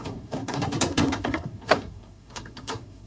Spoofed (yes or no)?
yes